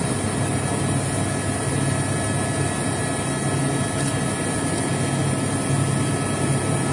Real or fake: real